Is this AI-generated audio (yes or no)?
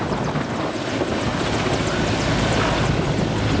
no